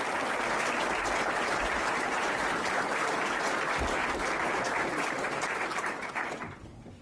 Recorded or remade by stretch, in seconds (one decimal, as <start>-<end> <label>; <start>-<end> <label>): 0.0-1.0 recorded; 1.0-3.5 remade; 3.5-4.0 recorded; 4.0-6.2 remade; 6.2-7.0 recorded